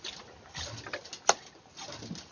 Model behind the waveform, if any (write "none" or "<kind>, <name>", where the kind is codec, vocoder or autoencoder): none